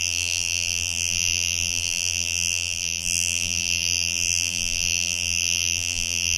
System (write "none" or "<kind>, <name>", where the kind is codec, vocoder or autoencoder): vocoder, BigVGAN v2